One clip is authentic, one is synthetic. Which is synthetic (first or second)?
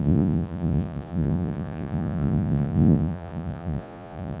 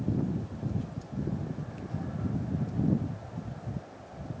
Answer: first